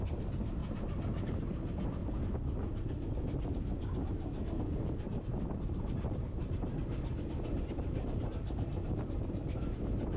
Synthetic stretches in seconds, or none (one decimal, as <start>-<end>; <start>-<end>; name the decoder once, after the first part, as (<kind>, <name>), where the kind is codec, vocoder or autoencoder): 0.0-0.6 (vocoder, BigVGAN v2); 1.2-2.0; 5.6-6.8; 7.6-10.2